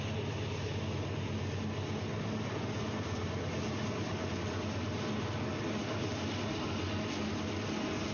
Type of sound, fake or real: real